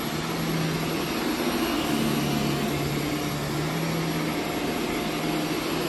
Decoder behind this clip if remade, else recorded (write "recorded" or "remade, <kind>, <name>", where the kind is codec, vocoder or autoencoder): recorded